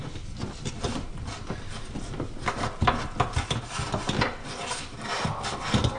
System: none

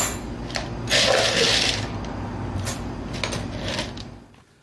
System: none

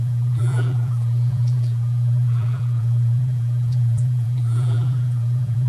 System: vocoder, BigVGAN v2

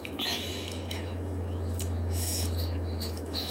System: autoencoder, DAC-VAE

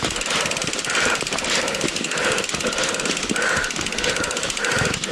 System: none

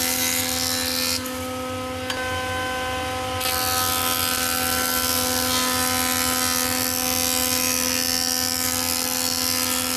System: none